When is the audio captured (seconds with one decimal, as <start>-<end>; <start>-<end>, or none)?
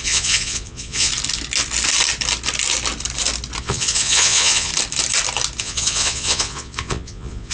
1.1-3.6; 4.7-5.6